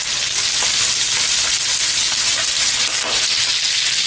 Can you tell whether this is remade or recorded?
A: remade